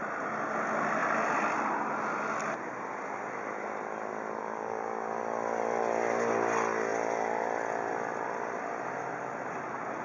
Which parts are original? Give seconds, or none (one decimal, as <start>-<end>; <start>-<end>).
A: 0.0-4.4; 5.2-10.0